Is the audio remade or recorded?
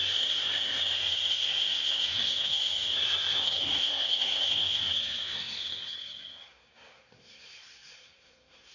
remade